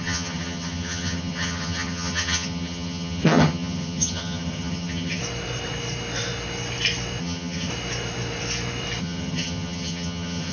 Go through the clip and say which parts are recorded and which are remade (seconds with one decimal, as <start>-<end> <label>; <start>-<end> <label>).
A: 0.0-5.2 remade; 5.2-7.2 recorded; 7.2-7.7 remade; 7.7-9.0 recorded; 9.0-10.5 remade